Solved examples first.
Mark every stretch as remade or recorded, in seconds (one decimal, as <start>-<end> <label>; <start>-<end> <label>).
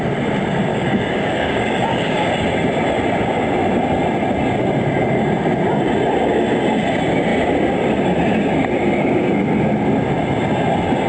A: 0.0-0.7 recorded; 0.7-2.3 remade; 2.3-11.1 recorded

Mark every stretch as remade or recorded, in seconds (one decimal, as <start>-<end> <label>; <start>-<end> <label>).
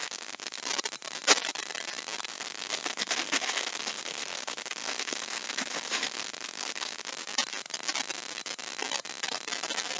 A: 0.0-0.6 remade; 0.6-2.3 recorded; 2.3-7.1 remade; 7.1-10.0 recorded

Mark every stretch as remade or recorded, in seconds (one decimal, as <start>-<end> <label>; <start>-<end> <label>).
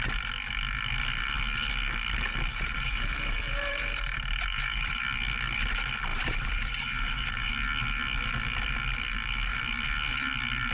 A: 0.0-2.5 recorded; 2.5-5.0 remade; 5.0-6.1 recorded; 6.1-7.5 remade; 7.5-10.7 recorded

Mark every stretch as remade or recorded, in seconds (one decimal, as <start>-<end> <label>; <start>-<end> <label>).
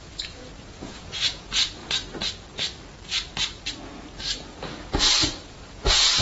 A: 0.0-1.8 remade; 1.8-5.5 recorded; 5.5-6.2 remade